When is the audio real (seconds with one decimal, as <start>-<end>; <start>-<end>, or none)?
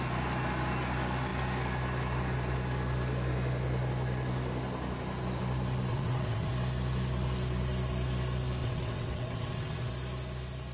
0.0-5.9; 6.5-8.6; 9.9-10.7